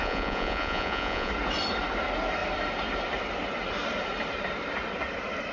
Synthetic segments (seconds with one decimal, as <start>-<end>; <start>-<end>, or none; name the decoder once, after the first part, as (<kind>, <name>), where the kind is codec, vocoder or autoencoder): 0.0-1.3 (vocoder, Vocos)